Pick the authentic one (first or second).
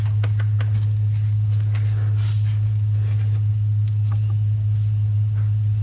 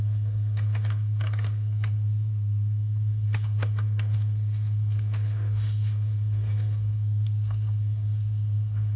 first